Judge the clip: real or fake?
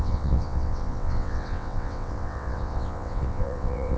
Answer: fake